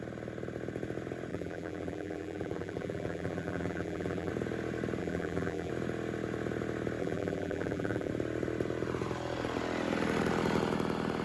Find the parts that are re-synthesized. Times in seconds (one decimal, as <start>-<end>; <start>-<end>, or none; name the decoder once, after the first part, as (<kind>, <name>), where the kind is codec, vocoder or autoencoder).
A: 1.3-4.3 (vocoder, BigVGAN v2); 5.0-5.7; 7.0-8.1